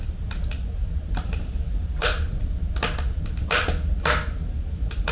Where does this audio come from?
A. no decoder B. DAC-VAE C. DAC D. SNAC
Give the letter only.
A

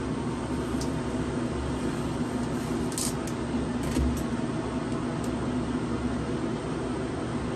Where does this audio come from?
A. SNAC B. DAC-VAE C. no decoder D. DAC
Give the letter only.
C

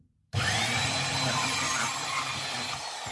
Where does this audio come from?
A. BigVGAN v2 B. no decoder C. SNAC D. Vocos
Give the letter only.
B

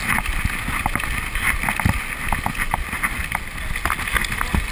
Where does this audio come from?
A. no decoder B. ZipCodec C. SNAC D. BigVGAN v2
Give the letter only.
A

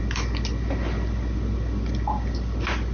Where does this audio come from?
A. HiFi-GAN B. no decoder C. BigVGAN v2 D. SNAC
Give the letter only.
B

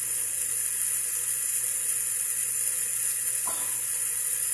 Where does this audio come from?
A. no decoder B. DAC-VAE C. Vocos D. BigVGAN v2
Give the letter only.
A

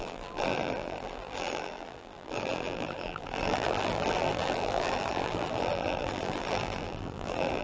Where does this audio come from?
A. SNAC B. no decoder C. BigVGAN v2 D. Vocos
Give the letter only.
C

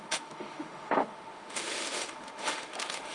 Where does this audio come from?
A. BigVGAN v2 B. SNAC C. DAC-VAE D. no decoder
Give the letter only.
C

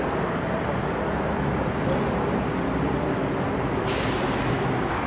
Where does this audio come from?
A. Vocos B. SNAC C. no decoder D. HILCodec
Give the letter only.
C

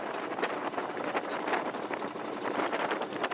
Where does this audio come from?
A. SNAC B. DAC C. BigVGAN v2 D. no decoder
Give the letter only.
D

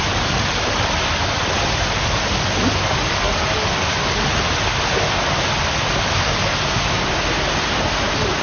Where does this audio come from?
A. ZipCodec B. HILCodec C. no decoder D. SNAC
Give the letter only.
C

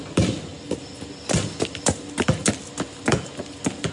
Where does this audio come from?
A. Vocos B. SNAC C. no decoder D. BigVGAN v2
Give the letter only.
C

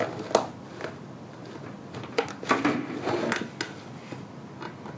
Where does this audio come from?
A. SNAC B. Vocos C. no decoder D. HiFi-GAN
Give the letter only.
C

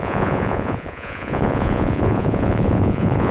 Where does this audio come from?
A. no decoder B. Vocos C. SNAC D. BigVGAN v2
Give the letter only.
B